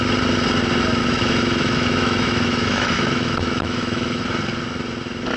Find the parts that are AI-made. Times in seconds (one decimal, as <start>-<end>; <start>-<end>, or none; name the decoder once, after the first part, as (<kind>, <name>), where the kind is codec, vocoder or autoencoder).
1.0-4.2 (autoencoder, DAC-VAE)